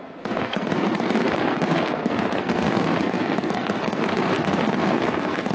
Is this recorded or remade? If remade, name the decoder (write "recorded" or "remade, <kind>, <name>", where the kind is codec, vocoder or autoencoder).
remade, codec, SNAC